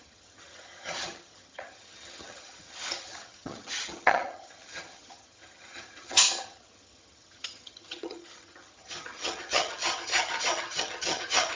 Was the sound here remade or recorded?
remade